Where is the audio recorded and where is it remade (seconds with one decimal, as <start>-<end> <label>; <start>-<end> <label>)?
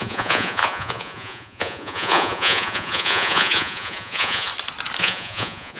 0.0-4.5 remade; 4.5-5.0 recorded; 5.0-5.8 remade